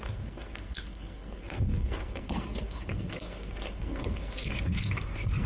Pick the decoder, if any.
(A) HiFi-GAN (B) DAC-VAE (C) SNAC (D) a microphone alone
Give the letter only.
C